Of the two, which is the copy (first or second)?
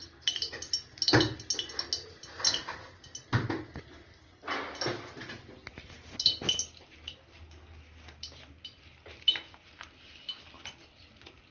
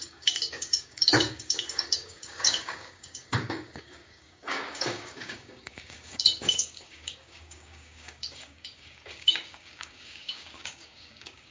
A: second